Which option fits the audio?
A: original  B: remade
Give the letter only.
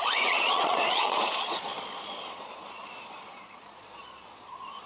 B